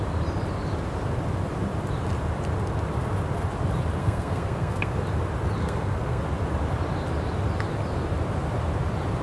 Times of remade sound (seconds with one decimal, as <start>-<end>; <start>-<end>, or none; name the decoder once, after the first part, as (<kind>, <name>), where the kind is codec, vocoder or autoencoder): 4.0-5.0 (codec, SNAC); 5.6-6.2